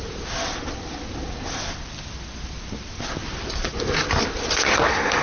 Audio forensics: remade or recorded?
recorded